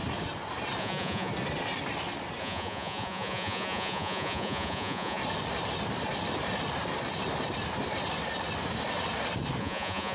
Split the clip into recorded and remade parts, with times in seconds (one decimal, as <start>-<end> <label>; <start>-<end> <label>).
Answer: 0.0-0.8 recorded; 0.8-1.3 remade; 1.3-2.4 recorded; 2.4-5.2 remade; 5.2-9.6 recorded; 9.6-10.1 remade

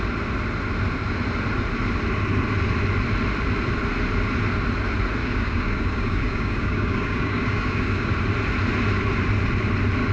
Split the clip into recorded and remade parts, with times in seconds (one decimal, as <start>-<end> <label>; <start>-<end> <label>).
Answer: 0.0-5.2 recorded; 5.2-8.1 remade; 8.1-10.1 recorded

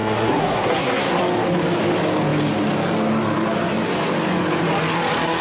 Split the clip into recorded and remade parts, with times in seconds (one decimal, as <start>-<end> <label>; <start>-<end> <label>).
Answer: 0.0-1.2 remade; 1.2-5.4 recorded

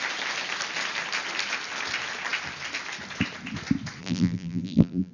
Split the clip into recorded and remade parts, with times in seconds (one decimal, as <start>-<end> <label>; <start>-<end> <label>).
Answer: 0.0-4.0 recorded; 4.0-5.1 remade

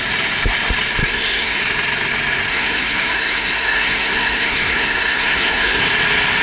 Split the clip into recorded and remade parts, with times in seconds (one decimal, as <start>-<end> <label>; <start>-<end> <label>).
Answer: 0.0-1.0 recorded; 1.0-1.6 remade; 1.6-2.5 recorded; 2.5-5.8 remade; 5.8-6.4 recorded

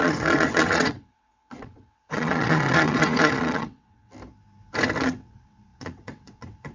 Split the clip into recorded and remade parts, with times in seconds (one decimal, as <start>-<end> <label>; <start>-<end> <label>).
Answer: 0.0-4.1 remade; 4.1-5.0 recorded; 5.0-6.7 remade

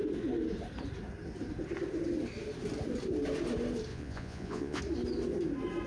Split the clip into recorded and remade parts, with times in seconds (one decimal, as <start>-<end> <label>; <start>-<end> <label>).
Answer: 0.0-3.9 recorded; 3.9-4.8 remade; 4.8-5.9 recorded